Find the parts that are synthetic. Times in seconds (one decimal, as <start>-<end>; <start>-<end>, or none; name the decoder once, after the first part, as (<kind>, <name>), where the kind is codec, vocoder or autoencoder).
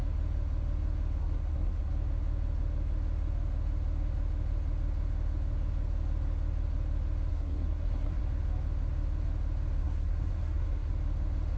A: 1.2-1.9 (codec, SNAC); 7.3-8.2; 9.8-10.9